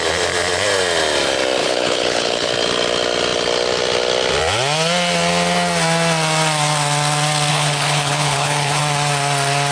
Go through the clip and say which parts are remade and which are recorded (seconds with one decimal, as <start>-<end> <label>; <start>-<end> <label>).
0.0-1.6 recorded; 1.6-2.5 remade; 2.5-7.5 recorded; 7.5-8.8 remade; 8.8-9.7 recorded